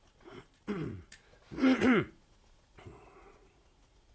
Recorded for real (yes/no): no